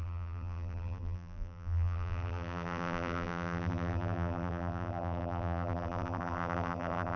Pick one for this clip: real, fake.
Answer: fake